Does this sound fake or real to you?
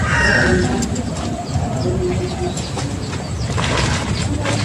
real